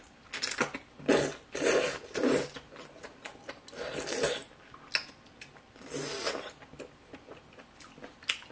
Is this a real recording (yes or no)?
yes